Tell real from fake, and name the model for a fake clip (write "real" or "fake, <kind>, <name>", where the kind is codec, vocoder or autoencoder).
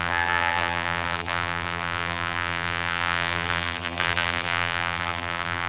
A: fake, vocoder, BigVGAN v2